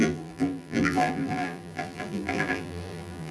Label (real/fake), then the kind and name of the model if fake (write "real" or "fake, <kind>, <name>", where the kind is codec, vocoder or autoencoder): fake, vocoder, BigVGAN v2